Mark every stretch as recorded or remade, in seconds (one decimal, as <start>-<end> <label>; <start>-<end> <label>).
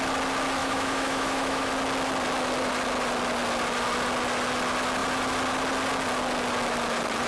0.0-0.6 recorded; 0.6-1.7 remade; 1.7-7.3 recorded